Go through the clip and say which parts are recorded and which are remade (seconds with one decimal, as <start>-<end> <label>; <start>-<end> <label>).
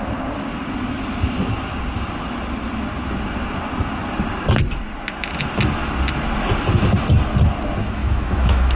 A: 0.0-7.8 recorded; 7.8-8.8 remade